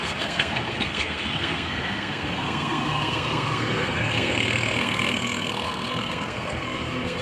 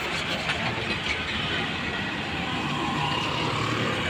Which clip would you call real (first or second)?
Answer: second